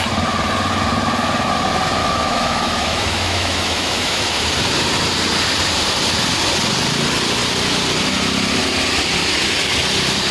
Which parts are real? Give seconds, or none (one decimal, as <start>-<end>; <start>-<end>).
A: 0.0-2.0; 4.4-10.3